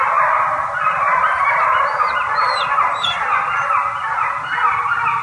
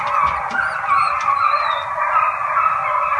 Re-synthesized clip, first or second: first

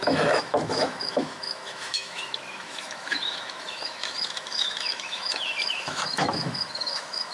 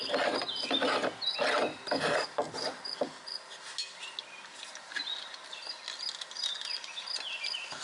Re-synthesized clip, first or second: first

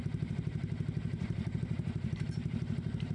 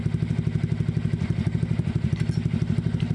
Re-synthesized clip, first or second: first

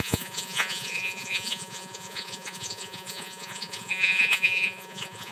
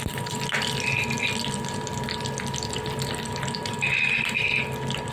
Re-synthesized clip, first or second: first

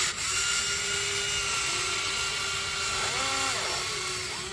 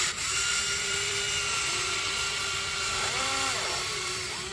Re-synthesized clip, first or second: second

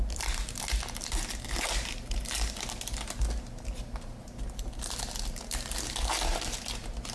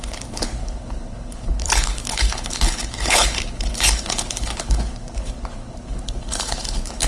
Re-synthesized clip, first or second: second